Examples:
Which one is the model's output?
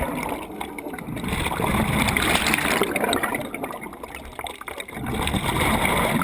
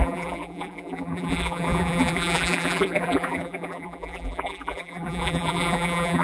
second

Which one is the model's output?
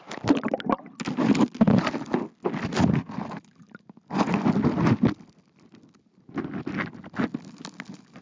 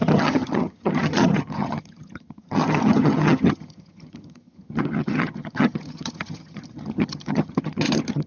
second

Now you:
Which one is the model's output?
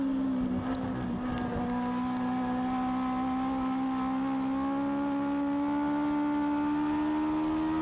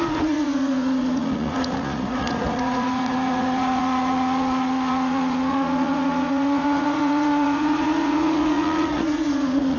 second